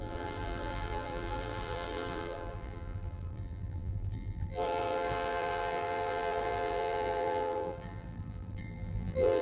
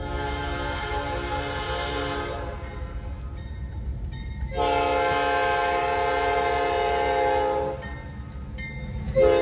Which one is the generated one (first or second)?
first